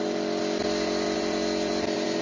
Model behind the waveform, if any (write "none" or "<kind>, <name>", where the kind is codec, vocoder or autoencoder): none